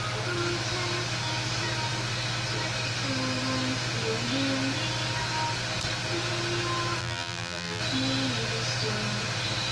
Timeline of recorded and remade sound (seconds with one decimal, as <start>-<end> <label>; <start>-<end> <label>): 0.0-7.0 recorded; 7.0-7.8 remade; 7.8-9.7 recorded